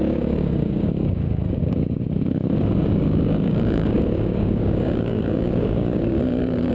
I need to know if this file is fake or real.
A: fake